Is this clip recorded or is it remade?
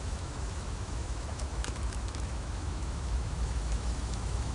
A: remade